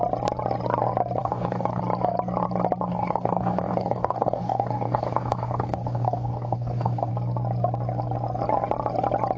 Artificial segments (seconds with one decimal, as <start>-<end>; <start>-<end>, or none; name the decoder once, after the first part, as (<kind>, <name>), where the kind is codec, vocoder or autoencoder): 1.2-1.8 (codec, DAC); 2.9-7.1